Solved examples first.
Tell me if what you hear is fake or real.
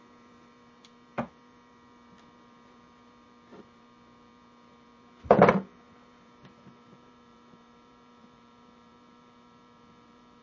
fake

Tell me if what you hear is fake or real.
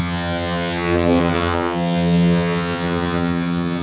fake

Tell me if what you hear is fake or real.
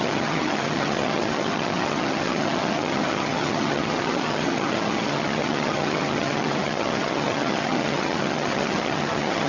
fake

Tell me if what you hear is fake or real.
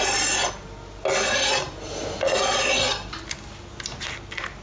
real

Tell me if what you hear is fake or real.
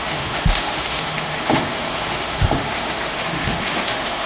fake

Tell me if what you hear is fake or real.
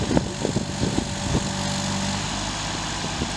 real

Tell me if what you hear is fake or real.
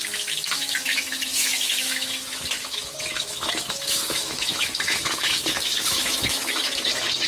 fake